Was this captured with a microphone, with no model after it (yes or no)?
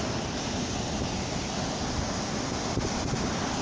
yes